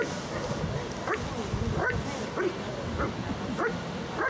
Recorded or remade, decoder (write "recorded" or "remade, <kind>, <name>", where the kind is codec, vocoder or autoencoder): recorded